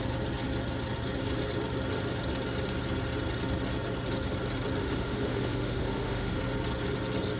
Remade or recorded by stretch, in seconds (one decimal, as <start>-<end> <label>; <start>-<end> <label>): 0.0-4.8 recorded; 4.8-6.4 remade; 6.4-7.4 recorded